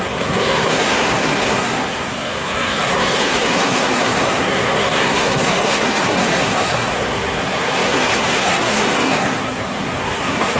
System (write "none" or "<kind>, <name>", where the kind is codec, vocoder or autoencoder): codec, SNAC